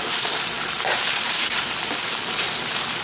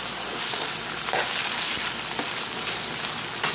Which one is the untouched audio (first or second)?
second